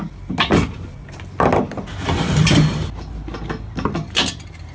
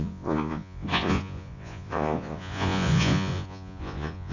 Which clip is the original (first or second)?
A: first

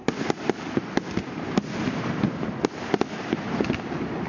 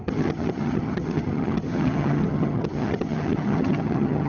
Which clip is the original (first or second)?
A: first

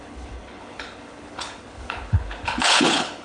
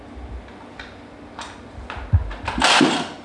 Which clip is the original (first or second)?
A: second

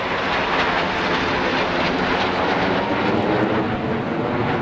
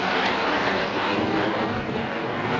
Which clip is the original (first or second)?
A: first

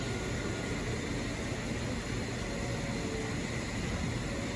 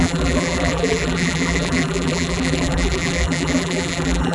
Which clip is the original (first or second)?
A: first